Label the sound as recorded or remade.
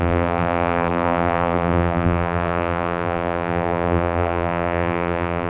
remade